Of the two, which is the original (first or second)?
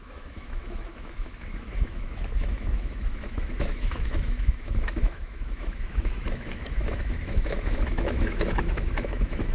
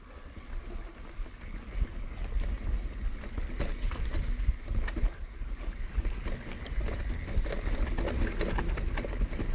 second